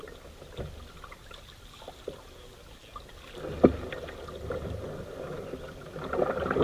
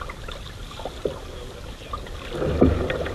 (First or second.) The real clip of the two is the first